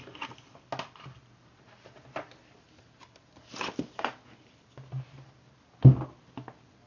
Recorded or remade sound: recorded